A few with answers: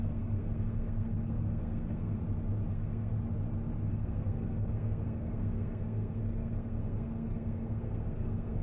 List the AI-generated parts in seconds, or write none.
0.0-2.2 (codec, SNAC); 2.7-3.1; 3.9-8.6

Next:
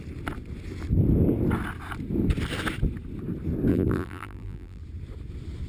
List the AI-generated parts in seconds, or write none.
3.7-4.8 (vocoder, BigVGAN v2)

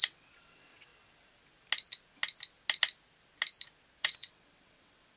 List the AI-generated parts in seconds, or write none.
0.0-0.9 (vocoder, WaveNeXt); 4.0-5.2